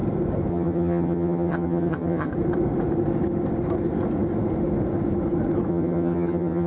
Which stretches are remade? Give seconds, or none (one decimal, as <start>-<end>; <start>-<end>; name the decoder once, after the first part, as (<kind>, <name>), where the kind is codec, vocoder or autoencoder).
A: 0.5-2.3 (vocoder, HiFi-GAN); 5.7-6.7